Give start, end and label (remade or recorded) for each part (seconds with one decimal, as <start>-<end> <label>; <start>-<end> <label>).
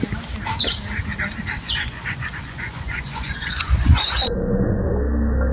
0.0-1.6 recorded; 1.6-4.9 remade; 4.9-5.5 recorded